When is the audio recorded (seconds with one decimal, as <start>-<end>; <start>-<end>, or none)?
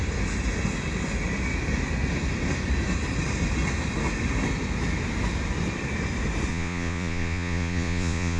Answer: 0.0-6.5